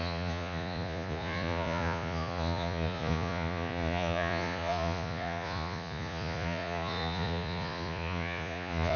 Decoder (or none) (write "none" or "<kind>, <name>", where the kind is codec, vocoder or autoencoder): vocoder, Vocos